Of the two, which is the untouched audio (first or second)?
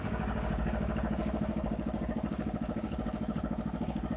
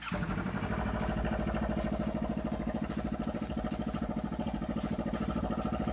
second